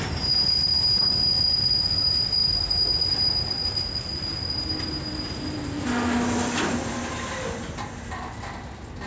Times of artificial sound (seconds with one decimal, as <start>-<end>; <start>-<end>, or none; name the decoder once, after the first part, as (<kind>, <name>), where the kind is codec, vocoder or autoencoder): none